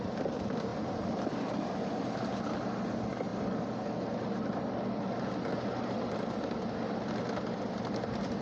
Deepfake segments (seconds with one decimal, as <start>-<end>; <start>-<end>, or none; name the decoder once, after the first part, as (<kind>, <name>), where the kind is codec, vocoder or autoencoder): none